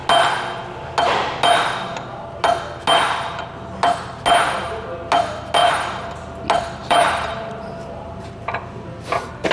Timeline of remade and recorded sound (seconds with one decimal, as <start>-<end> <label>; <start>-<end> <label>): 0.0-5.6 recorded; 5.6-6.1 remade; 6.1-6.8 recorded; 6.8-9.5 remade